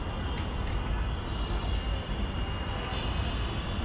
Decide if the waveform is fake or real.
real